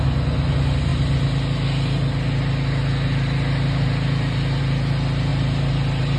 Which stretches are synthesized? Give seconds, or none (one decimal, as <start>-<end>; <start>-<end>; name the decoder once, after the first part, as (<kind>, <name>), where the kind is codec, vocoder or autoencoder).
5.3-6.2 (vocoder, BigVGAN v2)

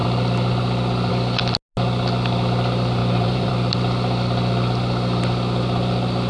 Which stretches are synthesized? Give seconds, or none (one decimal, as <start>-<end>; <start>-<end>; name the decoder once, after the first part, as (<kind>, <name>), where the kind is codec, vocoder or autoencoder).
3.0-3.5 (vocoder, BigVGAN v2)

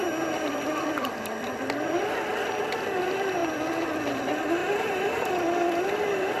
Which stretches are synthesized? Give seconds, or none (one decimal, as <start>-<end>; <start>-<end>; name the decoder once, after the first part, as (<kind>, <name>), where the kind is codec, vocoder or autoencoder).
4.6-5.3 (vocoder, BigVGAN v2)

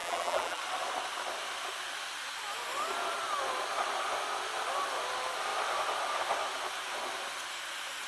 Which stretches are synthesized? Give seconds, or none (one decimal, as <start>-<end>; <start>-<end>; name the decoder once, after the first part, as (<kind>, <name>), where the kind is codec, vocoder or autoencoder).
0.0-0.6 (vocoder, BigVGAN v2)

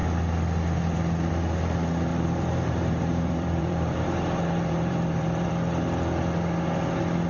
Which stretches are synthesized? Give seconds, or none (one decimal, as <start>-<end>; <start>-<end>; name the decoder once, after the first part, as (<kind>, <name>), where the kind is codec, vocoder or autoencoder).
2.1-5.5 (vocoder, BigVGAN v2)

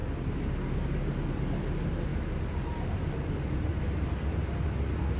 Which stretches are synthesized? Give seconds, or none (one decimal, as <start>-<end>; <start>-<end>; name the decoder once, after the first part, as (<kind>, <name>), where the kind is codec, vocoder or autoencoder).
2.1-3.8 (vocoder, BigVGAN v2)